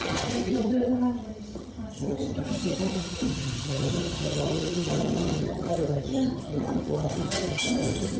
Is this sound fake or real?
fake